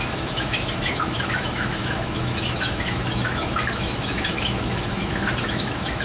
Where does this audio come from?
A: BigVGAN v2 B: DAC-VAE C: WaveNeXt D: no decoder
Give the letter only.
B